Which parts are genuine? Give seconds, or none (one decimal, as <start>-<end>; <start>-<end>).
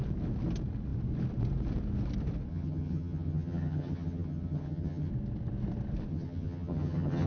0.0-2.5; 5.1-6.1